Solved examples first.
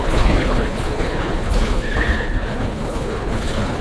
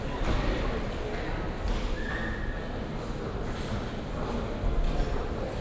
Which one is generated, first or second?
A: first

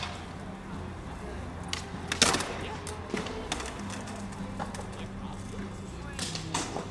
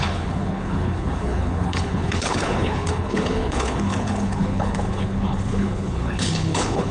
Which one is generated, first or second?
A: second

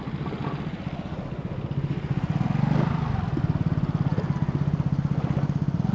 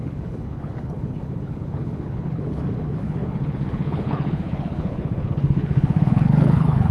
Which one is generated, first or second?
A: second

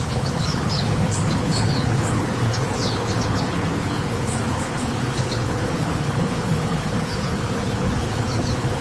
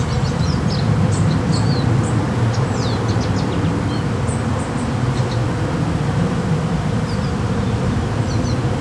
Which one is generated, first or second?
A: first